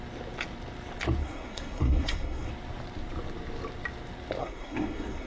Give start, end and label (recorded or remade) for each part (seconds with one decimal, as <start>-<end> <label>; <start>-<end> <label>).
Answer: 0.0-1.2 recorded; 1.2-2.5 remade; 2.5-4.4 recorded; 4.4-5.3 remade